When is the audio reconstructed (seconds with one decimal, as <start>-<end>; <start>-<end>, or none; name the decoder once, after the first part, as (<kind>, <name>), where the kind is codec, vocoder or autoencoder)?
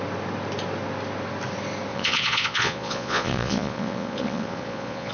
1.9-5.1 (vocoder, Vocos)